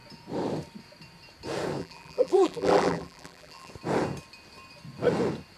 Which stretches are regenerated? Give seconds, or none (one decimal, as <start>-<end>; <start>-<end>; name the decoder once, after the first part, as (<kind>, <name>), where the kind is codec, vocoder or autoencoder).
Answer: 1.8-3.7 (vocoder, BigVGAN v2)